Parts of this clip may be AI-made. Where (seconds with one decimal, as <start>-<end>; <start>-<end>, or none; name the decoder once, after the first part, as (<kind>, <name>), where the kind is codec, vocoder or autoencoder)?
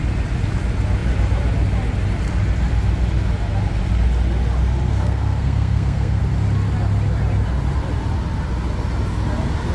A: 4.9-6.2 (codec, SNAC)